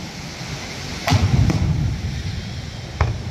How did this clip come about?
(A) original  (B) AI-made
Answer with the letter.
A